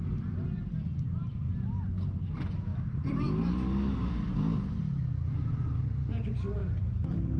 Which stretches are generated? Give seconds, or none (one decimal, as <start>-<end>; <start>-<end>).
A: 0.0-0.7; 2.7-6.1; 6.6-7.4

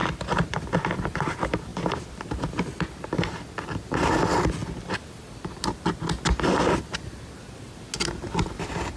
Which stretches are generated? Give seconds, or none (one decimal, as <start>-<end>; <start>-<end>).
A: 0.0-0.6; 1.7-2.3

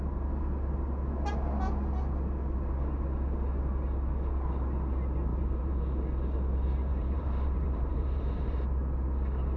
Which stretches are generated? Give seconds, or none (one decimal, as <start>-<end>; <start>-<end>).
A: 5.3-5.8; 6.9-8.6

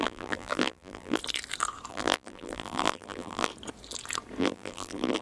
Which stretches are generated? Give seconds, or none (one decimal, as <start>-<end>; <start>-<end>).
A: 0.0-1.2; 1.9-3.5; 4.4-5.2

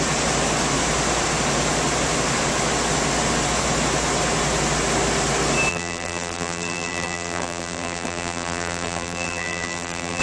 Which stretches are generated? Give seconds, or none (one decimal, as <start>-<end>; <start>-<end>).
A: 5.7-10.2